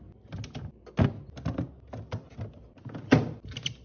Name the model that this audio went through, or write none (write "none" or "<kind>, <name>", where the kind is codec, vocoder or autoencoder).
none